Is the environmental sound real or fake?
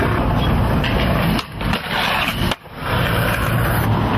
real